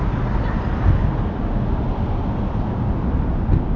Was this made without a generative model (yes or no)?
yes